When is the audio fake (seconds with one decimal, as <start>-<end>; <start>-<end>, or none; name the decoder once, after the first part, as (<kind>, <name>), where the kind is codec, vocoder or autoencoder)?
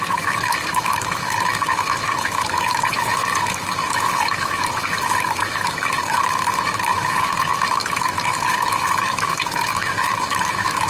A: 0.0-10.9 (autoencoder, DAC-VAE)